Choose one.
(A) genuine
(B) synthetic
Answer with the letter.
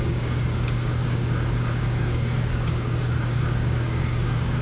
B